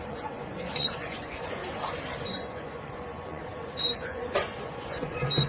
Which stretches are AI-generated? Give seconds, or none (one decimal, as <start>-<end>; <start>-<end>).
0.0-1.6; 2.2-5.5